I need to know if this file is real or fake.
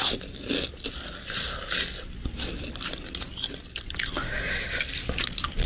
real